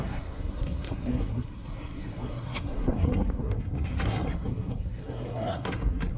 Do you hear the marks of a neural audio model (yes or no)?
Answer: yes